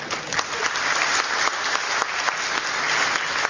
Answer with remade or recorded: recorded